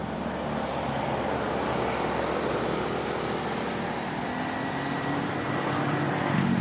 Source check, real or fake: real